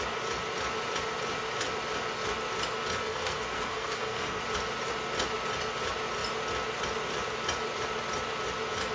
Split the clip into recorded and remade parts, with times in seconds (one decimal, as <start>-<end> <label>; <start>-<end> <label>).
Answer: 0.0-3.0 recorded; 3.0-4.4 remade; 4.4-8.9 recorded